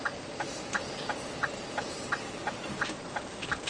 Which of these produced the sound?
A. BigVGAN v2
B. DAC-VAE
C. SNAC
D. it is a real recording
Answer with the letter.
A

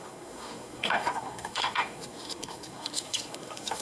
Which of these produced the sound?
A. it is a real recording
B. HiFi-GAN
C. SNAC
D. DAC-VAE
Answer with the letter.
C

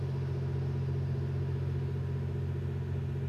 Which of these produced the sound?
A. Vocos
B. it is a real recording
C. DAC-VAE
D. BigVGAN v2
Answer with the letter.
B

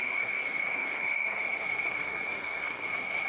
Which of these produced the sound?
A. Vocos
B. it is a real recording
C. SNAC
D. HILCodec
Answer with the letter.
C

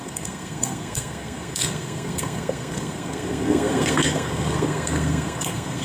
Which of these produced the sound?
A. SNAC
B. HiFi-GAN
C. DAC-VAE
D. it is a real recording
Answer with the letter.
A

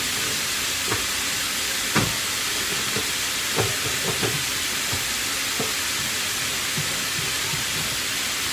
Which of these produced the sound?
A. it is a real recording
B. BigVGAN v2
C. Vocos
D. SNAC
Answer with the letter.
A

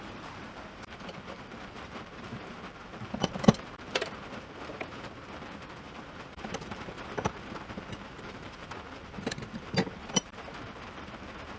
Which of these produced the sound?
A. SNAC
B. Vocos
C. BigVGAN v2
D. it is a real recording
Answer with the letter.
C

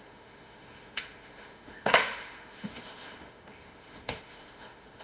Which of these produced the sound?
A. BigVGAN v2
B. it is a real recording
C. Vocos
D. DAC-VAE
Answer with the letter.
D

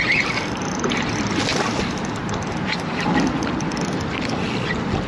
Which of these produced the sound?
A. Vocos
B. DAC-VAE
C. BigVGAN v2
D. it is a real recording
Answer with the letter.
D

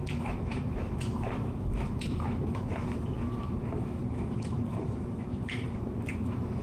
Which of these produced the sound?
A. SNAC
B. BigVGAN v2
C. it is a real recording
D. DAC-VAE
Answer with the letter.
D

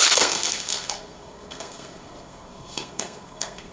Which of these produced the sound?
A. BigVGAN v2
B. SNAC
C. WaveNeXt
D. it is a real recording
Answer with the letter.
B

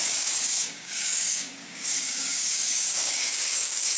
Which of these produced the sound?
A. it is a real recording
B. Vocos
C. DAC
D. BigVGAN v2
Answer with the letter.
C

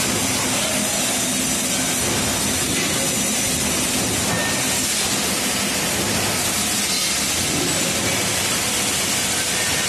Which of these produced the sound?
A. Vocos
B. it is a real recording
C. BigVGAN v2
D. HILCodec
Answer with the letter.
B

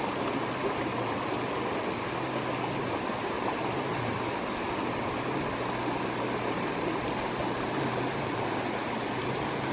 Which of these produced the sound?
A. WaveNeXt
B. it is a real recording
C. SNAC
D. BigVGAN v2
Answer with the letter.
B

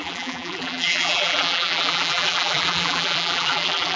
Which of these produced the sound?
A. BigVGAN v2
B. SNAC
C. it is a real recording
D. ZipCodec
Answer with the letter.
A